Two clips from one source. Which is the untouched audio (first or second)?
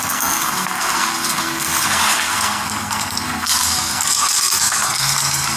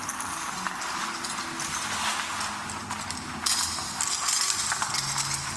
second